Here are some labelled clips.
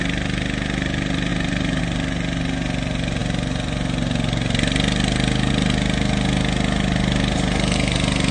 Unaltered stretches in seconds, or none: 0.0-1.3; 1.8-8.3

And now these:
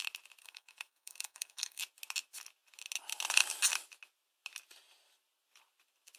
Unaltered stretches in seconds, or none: 0.0-0.4; 1.8-6.2

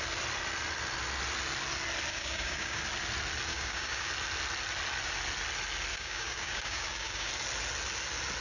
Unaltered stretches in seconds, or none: 0.0-2.1; 2.8-3.5; 4.1-5.9; 7.3-8.4

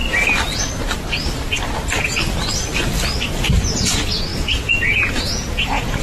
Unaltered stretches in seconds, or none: 0.0-3.6

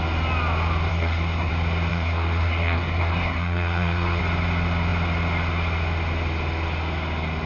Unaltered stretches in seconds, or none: 0.0-0.9; 1.5-1.9; 4.2-7.5